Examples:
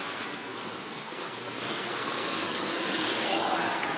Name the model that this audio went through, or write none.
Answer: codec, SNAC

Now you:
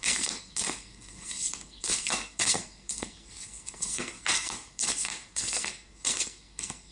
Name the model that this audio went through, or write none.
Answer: codec, SNAC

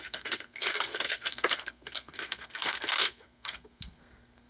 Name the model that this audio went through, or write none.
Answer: codec, SNAC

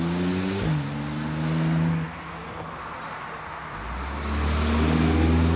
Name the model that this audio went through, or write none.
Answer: none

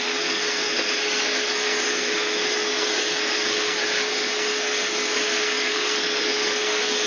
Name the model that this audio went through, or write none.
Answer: codec, SNAC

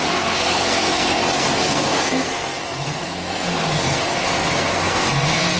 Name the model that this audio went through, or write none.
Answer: codec, SNAC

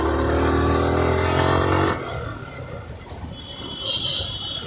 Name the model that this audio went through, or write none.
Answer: none